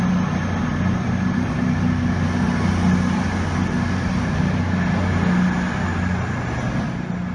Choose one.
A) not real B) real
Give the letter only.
B